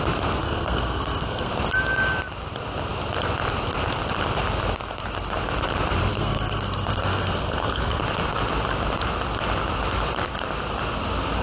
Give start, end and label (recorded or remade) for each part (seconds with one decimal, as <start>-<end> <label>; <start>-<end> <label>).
0.0-0.4 recorded; 0.4-1.5 remade; 1.5-6.1 recorded; 6.1-8.0 remade; 8.0-11.4 recorded